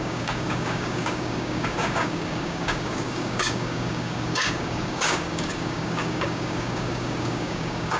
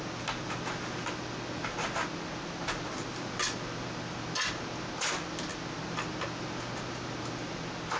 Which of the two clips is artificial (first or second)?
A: first